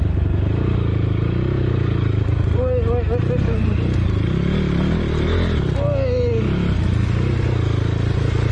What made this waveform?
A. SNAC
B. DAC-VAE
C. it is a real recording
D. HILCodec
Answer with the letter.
C